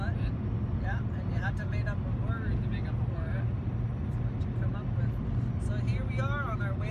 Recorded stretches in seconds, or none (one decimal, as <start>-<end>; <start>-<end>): 0.0-6.9